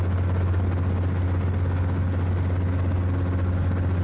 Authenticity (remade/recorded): recorded